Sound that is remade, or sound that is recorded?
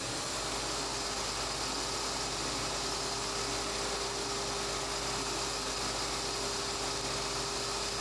recorded